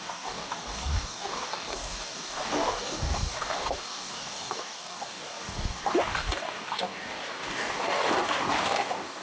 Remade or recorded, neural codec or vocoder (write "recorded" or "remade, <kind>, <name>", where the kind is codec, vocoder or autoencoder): remade, codec, DAC